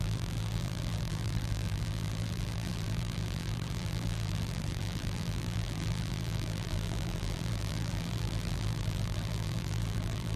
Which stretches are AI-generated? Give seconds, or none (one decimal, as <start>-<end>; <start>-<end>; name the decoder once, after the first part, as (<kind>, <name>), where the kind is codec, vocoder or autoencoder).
0.0-10.4 (vocoder, BigVGAN v2)